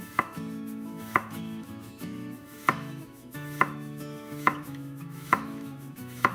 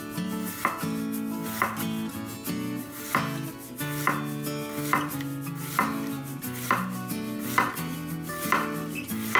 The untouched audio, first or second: second